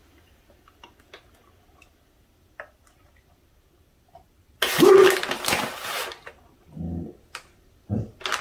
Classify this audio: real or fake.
real